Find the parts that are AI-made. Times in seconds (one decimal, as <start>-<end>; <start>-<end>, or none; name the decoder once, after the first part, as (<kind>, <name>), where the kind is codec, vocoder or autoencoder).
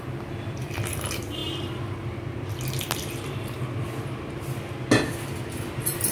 0.0-1.4 (vocoder, BigVGAN v2); 5.1-6.1